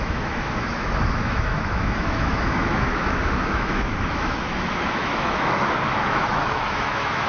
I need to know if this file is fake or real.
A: fake